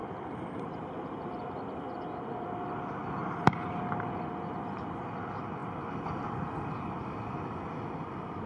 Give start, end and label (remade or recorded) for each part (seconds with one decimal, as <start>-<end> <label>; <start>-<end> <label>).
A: 0.0-0.8 remade; 0.8-3.2 recorded; 3.2-3.7 remade; 3.7-8.5 recorded

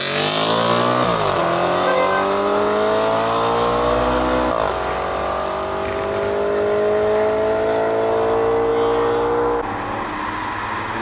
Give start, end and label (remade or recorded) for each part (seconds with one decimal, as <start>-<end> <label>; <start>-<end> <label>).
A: 0.0-11.0 recorded